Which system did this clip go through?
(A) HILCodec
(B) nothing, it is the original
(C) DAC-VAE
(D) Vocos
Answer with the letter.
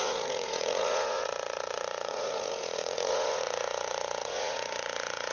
D